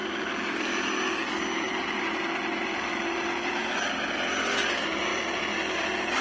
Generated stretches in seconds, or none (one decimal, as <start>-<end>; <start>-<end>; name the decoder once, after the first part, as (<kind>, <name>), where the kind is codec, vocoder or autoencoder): none

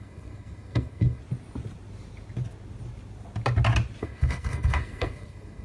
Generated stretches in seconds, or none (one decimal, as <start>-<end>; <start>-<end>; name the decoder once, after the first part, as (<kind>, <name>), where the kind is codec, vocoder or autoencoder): 0.0-1.2 (codec, SNAC); 4.0-5.6